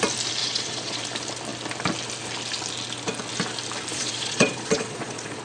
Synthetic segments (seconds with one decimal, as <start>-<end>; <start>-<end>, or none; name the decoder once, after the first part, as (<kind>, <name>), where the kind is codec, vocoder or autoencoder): 0.4-1.0 (vocoder, Vocos); 3.9-5.4